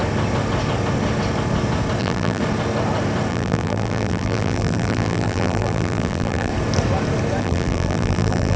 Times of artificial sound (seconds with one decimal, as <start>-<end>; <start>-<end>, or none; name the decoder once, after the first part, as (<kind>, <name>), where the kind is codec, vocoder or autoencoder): 2.0-2.4 (vocoder, BigVGAN v2); 3.3-6.5; 7.4-8.6